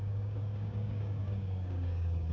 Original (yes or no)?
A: no